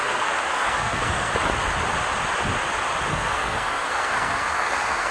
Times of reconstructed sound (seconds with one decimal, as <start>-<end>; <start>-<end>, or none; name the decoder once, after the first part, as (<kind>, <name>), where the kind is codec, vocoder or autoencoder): 0.0-1.3 (codec, SNAC); 3.1-5.1